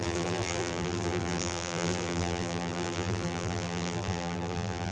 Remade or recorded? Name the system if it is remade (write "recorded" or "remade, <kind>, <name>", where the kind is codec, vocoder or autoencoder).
remade, vocoder, BigVGAN v2